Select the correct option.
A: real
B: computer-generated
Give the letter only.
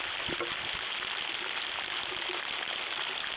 A